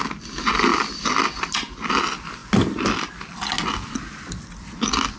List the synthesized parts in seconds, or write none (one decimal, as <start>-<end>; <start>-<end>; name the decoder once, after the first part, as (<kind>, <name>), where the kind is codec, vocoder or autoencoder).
none